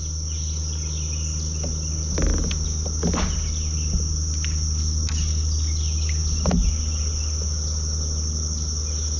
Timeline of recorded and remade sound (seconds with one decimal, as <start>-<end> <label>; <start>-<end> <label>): 0.0-9.2 recorded